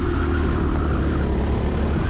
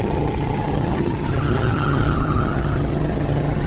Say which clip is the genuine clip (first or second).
first